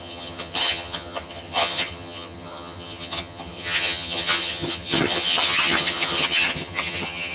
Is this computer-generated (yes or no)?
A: yes